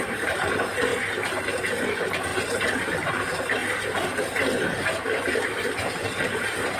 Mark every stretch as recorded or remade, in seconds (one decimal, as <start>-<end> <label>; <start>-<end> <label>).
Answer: 0.0-0.9 remade; 0.9-1.6 recorded; 1.6-2.3 remade; 2.3-2.8 recorded; 2.8-6.8 remade